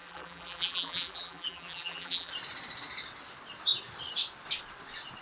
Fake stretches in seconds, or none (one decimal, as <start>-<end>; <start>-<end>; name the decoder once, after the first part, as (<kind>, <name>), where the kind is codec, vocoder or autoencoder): 0.0-2.3 (vocoder, BigVGAN v2)